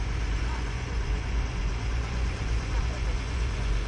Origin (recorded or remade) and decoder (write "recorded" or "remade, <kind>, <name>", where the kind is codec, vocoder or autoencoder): remade, vocoder, Vocos